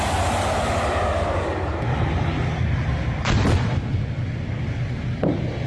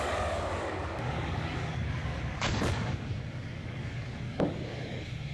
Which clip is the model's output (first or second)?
second